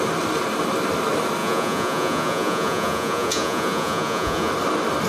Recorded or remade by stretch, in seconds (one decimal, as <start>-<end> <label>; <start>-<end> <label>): 0.0-1.4 recorded; 1.4-4.5 remade; 4.5-5.1 recorded